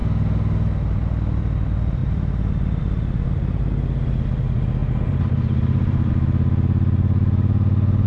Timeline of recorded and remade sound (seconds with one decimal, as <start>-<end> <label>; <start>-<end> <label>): 0.0-2.0 recorded; 2.0-2.8 remade; 2.8-4.8 recorded; 4.8-6.1 remade; 6.1-8.1 recorded